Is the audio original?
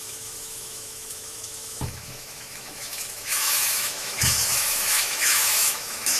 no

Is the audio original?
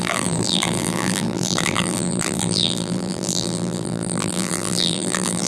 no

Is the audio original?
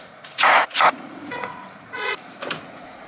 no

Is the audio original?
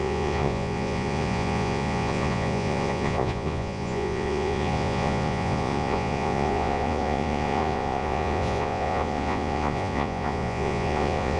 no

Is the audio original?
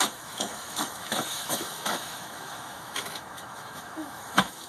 no